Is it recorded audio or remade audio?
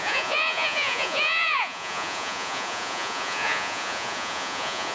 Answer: remade